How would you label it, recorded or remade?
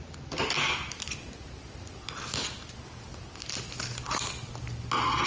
recorded